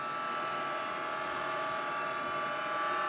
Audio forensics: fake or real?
real